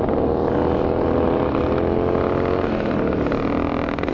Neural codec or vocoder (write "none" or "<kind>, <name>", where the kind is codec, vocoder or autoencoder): none